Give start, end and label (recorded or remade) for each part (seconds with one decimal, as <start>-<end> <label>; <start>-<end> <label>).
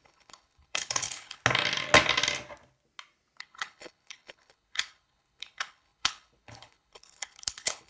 0.0-1.4 remade; 1.4-3.4 recorded; 3.4-7.9 remade